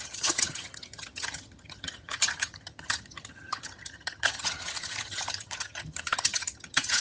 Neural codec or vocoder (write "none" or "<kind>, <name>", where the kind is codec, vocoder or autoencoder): vocoder, HiFi-GAN